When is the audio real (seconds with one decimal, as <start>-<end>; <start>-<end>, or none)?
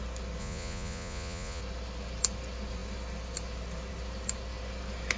0.0-0.4; 1.6-5.2